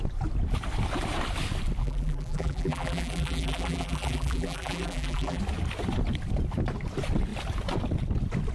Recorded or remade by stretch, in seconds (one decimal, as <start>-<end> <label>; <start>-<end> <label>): 0.0-1.8 recorded; 1.8-5.4 remade; 5.4-8.5 recorded